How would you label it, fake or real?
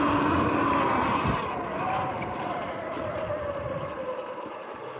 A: real